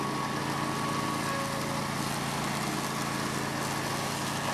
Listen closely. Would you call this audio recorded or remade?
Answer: recorded